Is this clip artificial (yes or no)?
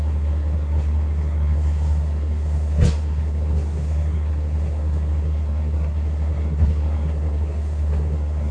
yes